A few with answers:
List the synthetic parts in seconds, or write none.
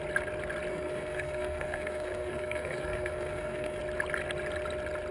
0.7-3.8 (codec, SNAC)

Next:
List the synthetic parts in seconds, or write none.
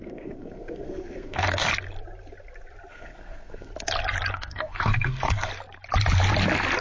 0.0-1.7 (codec, SNAC); 2.9-3.7; 4.3-5.5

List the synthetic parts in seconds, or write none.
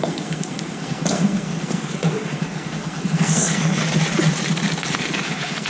0.0-3.8 (codec, SNAC); 4.9-5.7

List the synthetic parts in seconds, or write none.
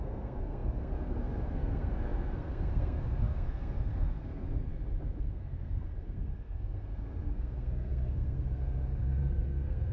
0.0-4.7 (codec, SNAC); 5.2-9.9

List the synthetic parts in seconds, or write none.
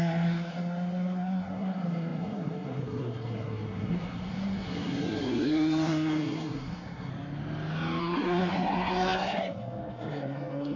0.0-7.1 (codec, SNAC); 8.0-10.8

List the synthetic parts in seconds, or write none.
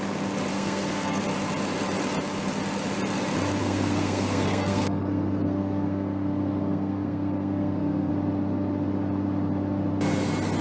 0.5-1.2 (codec, SNAC); 3.6-8.1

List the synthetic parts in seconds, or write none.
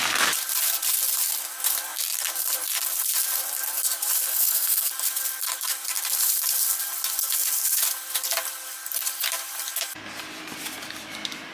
4.3-4.9 (codec, SNAC)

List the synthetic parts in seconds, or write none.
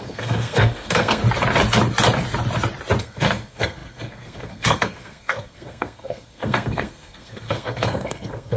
0.0-1.2 (codec, SNAC); 3.0-8.6